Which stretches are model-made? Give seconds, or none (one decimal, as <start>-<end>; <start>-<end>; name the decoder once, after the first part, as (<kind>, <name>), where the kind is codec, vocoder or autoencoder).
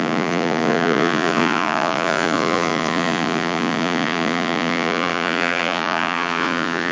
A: 0.0-6.9 (vocoder, Vocos)